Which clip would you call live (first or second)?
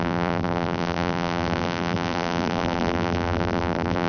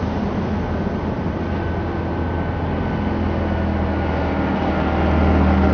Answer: second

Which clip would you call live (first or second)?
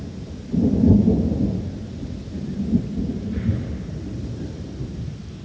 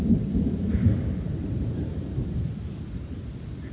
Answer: first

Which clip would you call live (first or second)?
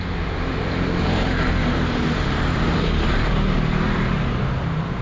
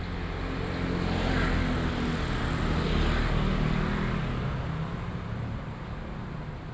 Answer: second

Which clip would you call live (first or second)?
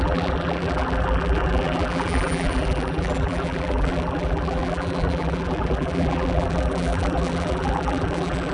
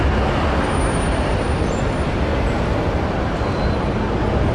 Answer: second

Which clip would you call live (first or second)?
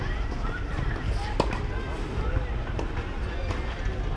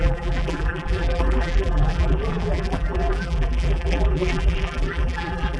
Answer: first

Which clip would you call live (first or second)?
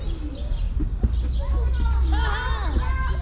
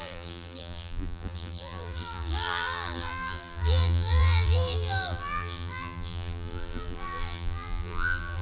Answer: first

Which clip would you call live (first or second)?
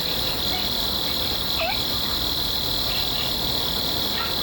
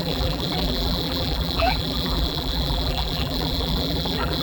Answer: first